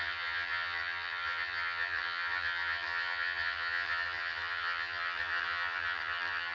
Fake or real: fake